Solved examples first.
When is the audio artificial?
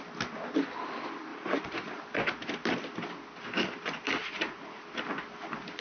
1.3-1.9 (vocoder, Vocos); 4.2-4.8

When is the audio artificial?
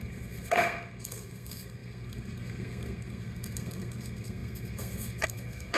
0.0-5.8 (codec, SNAC)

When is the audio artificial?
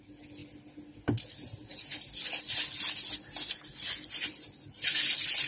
none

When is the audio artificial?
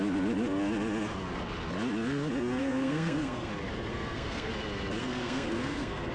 2.6-3.5 (codec, SNAC); 3.9-4.5; 5.0-6.1